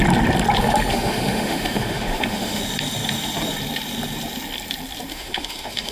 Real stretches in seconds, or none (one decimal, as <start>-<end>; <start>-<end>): 0.0-0.9; 2.6-5.1

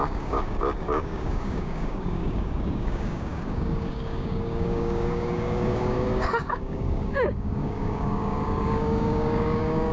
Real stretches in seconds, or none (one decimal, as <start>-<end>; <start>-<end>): none